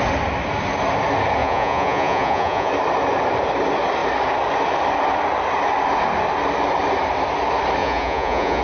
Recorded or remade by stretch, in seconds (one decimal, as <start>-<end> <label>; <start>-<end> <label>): 0.0-1.4 recorded; 1.4-2.7 remade; 2.7-7.8 recorded; 7.8-8.6 remade